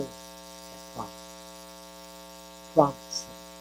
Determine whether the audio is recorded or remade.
recorded